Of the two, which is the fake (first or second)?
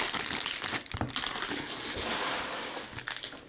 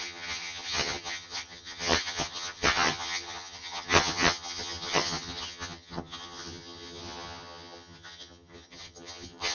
second